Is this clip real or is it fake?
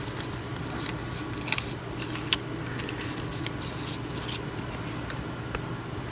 real